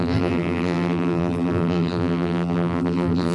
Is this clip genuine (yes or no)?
no